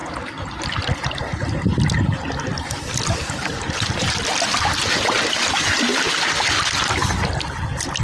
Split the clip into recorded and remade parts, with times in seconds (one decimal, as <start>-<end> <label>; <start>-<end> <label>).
0.0-1.7 remade; 1.7-3.0 recorded; 3.0-4.7 remade; 4.7-5.3 recorded; 5.3-5.9 remade; 5.9-7.2 recorded; 7.2-8.0 remade